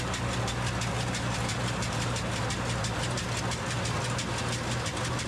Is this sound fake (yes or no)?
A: no